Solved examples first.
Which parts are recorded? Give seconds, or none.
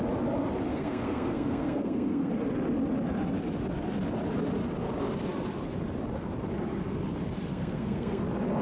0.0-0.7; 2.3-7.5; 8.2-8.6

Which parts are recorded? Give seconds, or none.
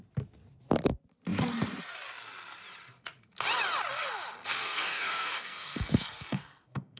0.0-4.4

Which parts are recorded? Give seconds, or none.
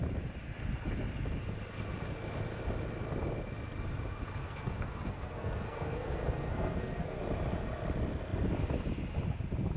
0.0-4.4; 7.2-9.8